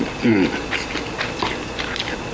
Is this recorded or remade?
recorded